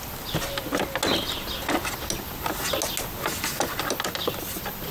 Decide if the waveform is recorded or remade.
recorded